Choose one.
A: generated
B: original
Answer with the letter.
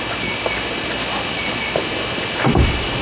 B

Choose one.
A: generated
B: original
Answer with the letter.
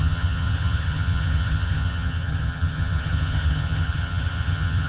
A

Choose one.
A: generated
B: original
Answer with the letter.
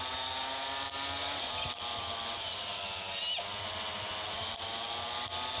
B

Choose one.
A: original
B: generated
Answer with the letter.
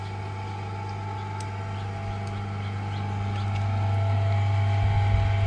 A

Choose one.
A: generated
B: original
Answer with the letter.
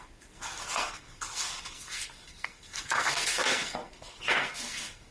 A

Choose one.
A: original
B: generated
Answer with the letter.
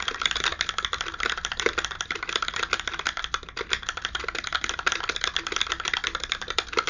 A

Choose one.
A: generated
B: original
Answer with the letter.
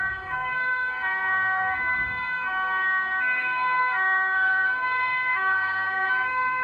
A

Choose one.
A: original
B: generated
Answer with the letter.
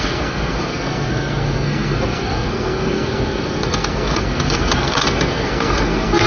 B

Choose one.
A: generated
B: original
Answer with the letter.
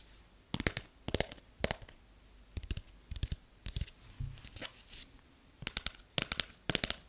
B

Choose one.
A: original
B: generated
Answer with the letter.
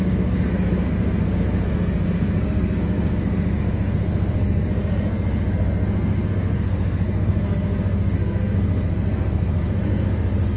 B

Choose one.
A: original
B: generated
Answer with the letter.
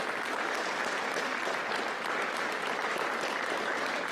A